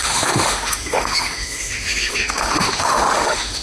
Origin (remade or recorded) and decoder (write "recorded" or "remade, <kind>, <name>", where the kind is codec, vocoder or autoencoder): remade, autoencoder, DAC-VAE